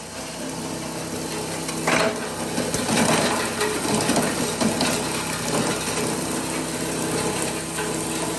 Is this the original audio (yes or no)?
yes